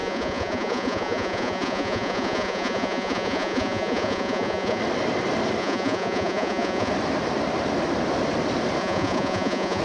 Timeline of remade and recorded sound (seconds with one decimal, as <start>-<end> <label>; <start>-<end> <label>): 0.0-4.8 remade; 4.8-5.6 recorded; 5.6-6.9 remade; 6.9-8.8 recorded; 8.8-9.8 remade